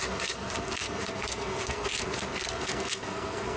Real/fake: fake